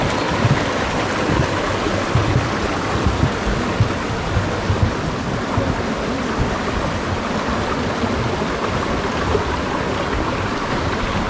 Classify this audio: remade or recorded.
recorded